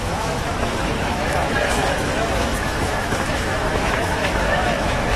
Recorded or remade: remade